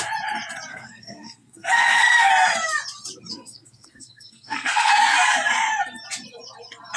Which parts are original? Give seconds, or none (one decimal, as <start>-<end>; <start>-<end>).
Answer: 0.0-0.7; 2.3-3.3; 4.9-7.0